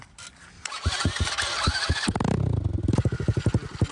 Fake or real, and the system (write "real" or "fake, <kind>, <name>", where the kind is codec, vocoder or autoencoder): real